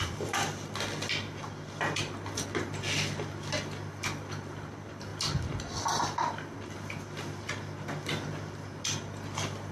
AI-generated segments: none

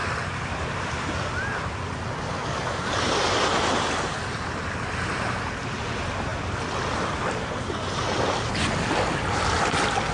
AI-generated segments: none

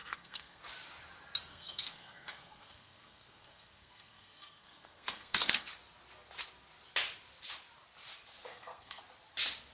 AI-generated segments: 0.0-0.6; 1.5-5.7; 8.4-9.0